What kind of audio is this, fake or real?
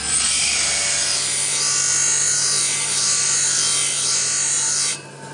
real